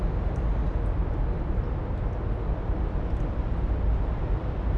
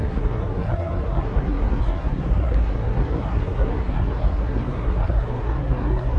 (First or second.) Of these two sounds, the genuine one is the first